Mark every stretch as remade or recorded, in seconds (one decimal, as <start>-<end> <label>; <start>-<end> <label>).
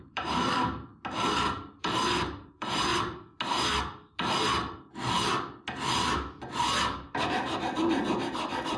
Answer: 0.0-0.9 remade; 0.9-1.8 recorded; 1.8-2.9 remade; 2.9-7.2 recorded; 7.2-8.8 remade